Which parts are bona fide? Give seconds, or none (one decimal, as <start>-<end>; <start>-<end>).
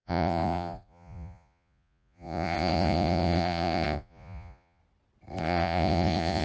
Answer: 4.8-5.4